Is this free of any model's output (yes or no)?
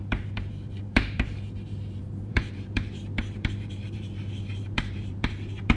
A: no